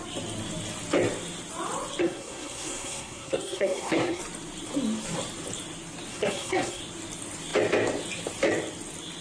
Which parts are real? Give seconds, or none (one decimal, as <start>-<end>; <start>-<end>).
0.0-2.0; 4.2-6.1; 6.8-9.2